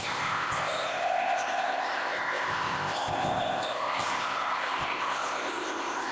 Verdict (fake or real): fake